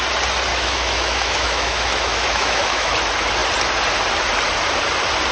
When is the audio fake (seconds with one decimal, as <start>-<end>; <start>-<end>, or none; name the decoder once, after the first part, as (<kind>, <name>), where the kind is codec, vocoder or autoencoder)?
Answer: 0.5-2.9 (autoencoder, DAC-VAE)